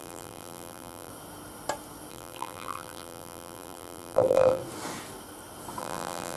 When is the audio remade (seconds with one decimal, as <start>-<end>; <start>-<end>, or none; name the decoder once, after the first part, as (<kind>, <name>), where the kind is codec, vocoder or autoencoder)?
0.0-1.1 (vocoder, BigVGAN v2); 2.1-4.6; 5.8-6.4